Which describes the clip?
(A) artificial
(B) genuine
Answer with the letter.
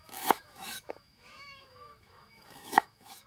A